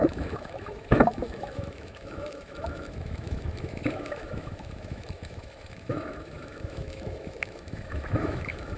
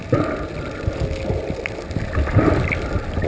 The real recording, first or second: second